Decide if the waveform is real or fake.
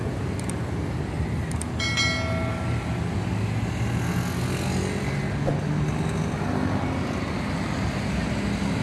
real